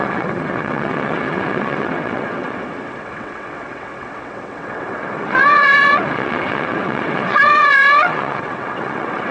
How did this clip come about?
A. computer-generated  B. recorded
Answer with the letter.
A